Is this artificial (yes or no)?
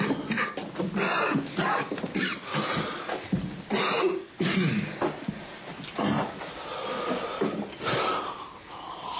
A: no